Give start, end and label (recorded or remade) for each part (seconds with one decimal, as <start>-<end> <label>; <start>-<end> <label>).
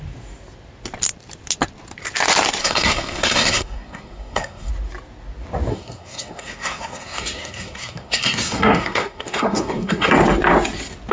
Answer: 0.0-2.6 recorded; 2.6-4.7 remade; 4.7-5.7 recorded; 5.7-10.1 remade; 10.1-11.1 recorded